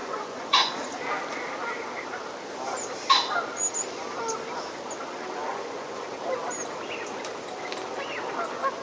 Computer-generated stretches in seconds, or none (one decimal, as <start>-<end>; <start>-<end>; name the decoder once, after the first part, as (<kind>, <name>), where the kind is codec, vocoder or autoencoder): 0.0-0.7 (vocoder, Vocos); 5.5-6.1

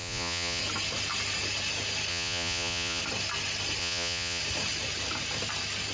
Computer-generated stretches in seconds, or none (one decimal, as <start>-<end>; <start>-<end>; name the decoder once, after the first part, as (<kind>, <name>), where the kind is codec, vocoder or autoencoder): 0.0-0.6 (vocoder, Vocos); 2.1-3.0; 3.8-4.4

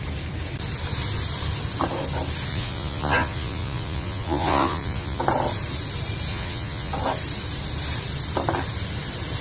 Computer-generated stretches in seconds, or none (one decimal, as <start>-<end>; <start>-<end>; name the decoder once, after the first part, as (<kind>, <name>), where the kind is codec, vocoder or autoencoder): 2.5-5.2 (vocoder, Vocos); 6.3-6.9

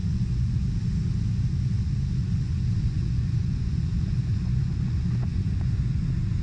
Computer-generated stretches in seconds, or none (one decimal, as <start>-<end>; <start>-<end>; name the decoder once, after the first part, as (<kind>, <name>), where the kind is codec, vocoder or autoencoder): 0.0-0.6 (vocoder, Vocos); 2.2-6.0

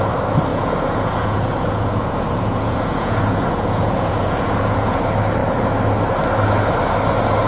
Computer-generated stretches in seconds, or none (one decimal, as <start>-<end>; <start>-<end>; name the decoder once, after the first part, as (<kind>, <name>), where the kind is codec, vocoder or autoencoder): 0.5-5.0 (vocoder, Vocos)

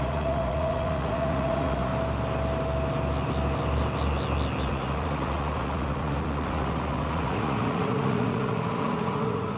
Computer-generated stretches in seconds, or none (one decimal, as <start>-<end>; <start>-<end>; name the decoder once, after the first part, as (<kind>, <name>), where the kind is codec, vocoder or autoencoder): 0.0-1.9 (vocoder, Vocos); 4.6-9.6

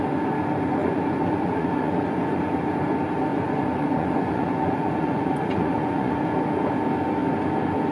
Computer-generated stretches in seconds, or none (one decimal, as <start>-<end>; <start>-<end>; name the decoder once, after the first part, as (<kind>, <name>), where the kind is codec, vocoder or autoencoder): 0.8-2.4 (vocoder, Vocos); 3.3-6.2